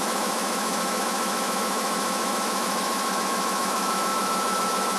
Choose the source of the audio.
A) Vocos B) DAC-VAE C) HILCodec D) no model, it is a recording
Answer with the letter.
B